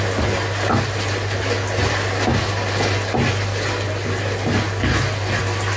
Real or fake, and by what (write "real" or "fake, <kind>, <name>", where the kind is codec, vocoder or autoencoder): real